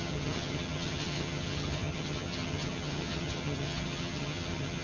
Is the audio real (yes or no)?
no